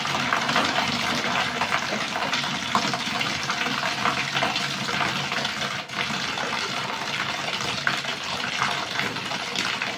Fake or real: fake